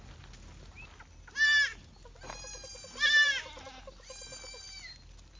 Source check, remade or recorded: recorded